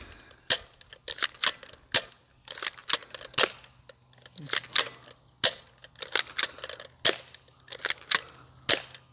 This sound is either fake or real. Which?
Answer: real